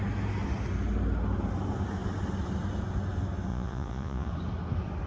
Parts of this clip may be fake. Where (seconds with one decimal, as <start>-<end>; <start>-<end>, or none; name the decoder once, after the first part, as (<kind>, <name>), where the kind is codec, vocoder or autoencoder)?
3.5-4.3 (vocoder, Vocos)